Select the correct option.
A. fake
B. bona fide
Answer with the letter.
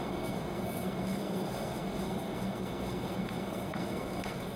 A